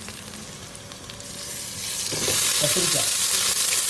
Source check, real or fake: real